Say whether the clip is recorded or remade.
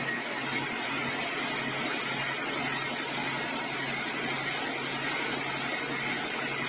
recorded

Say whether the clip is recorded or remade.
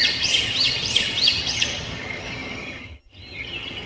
remade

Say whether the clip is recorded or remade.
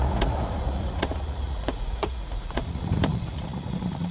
remade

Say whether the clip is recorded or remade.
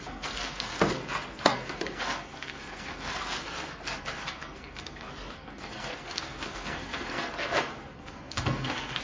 remade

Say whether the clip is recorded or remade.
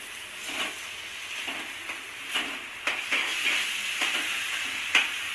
recorded